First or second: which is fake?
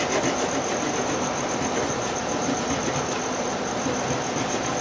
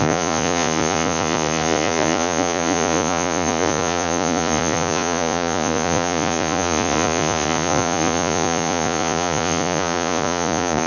second